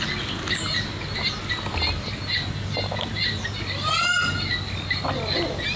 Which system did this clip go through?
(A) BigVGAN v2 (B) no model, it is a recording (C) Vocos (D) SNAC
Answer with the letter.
B